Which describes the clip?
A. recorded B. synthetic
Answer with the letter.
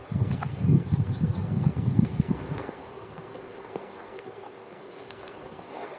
B